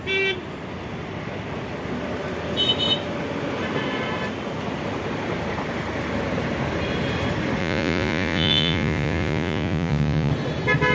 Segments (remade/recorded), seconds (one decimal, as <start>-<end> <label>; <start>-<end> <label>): 0.0-7.6 recorded; 7.6-10.3 remade; 10.3-10.9 recorded